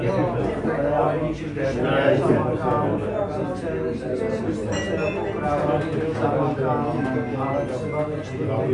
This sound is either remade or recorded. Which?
recorded